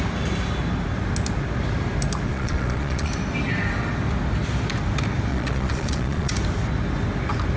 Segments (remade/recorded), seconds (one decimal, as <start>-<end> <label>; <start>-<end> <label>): 0.0-2.3 recorded; 2.3-3.1 remade; 3.1-5.3 recorded; 5.3-6.3 remade; 6.3-7.6 recorded